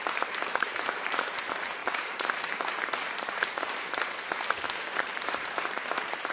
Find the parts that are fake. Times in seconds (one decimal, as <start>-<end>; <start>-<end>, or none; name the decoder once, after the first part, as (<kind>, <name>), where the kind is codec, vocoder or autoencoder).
0.0-6.3 (vocoder, BigVGAN v2)